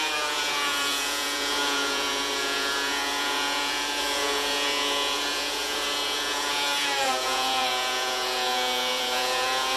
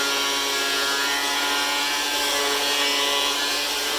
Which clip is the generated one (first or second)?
first